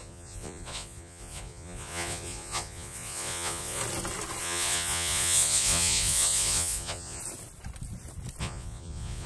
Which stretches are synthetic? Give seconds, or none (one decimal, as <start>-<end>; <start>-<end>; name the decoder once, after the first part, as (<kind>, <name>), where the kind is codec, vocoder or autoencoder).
0.0-3.8 (vocoder, Vocos); 4.4-7.2; 8.4-9.3